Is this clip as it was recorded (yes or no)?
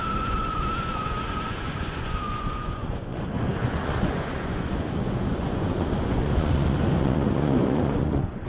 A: no